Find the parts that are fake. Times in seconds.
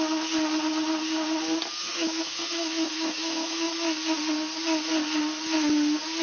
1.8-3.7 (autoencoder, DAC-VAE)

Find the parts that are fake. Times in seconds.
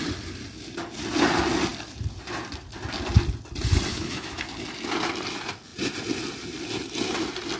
3.9-4.4 (autoencoder, DAC-VAE)